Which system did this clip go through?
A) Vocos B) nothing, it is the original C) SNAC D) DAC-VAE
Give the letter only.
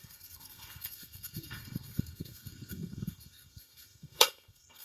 C